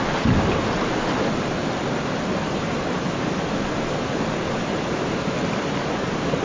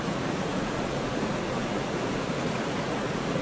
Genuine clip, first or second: first